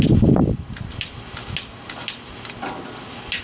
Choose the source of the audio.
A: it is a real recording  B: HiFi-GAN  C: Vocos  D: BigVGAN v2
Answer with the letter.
A